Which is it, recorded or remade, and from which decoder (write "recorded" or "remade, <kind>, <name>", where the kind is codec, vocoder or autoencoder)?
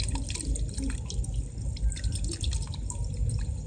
recorded